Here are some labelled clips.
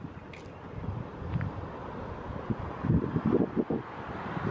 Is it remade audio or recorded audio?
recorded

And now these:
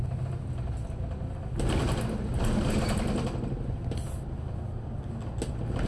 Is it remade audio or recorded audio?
recorded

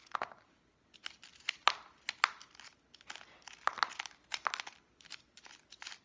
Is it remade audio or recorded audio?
recorded